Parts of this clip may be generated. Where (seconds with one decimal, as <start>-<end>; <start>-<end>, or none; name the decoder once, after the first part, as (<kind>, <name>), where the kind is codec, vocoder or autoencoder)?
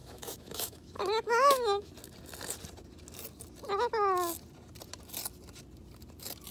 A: 0.0-1.9 (autoencoder, DAC-VAE)